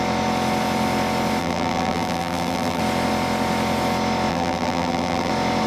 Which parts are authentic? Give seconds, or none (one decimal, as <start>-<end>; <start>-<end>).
0.0-1.4; 2.8-4.3; 5.3-5.7